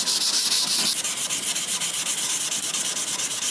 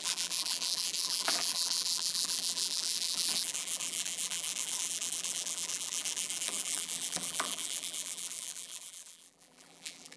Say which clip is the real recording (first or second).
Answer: first